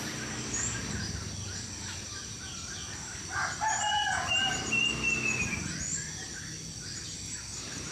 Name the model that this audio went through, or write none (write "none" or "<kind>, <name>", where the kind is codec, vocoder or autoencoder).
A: none